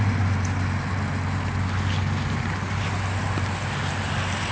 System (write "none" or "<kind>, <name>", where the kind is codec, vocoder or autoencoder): none